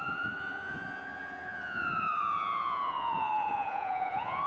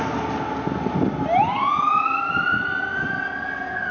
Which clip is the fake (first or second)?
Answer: first